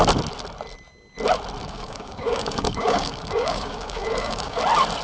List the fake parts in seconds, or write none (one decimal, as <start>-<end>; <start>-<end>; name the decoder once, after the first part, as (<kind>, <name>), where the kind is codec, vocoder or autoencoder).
1.6-4.6 (codec, DAC)